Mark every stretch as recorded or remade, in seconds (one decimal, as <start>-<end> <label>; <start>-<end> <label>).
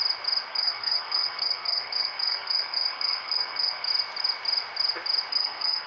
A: 0.0-0.5 recorded; 0.5-3.9 remade; 3.9-5.3 recorded; 5.3-5.9 remade